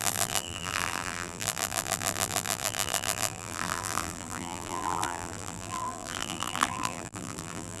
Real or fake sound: fake